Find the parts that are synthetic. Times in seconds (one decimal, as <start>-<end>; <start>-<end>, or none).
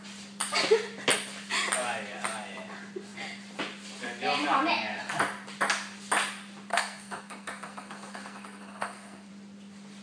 6.7-9.3